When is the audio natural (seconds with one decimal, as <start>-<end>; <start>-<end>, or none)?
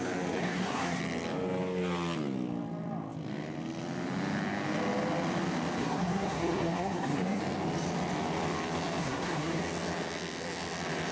0.0-0.4; 1.0-5.8; 7.4-9.0; 9.6-11.1